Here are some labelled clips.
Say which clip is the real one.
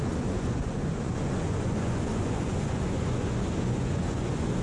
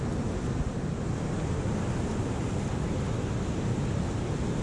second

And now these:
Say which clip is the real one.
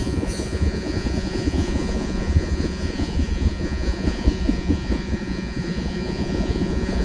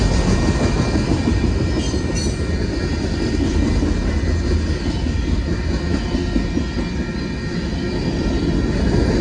second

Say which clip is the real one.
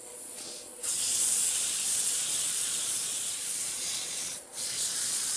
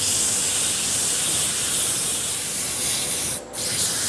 second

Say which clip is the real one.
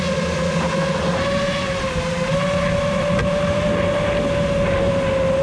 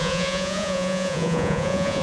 first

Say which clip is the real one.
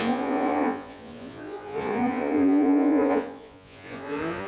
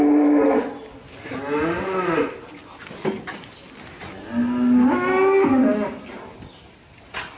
second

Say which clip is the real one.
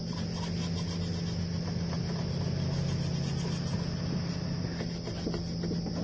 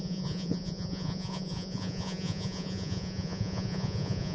first